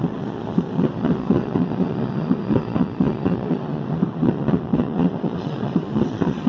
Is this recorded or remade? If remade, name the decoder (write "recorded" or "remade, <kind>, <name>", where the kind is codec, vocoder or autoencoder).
remade, vocoder, Vocos